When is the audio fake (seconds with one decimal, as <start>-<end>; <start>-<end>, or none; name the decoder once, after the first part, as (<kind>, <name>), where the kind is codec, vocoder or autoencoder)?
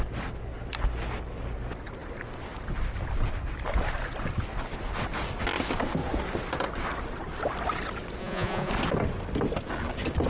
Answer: 8.2-8.7 (vocoder, Vocos)